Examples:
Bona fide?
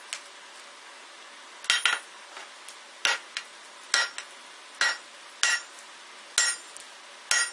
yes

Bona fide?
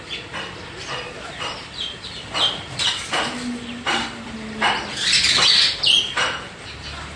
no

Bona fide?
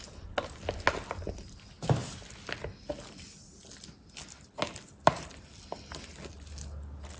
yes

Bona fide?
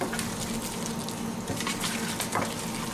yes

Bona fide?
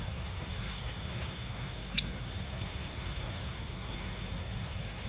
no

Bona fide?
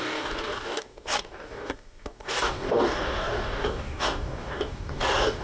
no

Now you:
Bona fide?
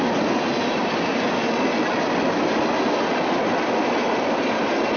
yes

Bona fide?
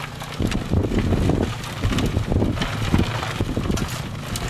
yes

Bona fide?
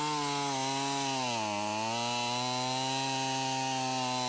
yes